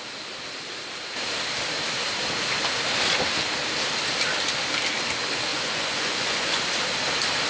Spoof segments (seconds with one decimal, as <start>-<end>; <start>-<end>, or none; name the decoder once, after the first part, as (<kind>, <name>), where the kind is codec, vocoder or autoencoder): 5.5-6.6 (vocoder, Vocos)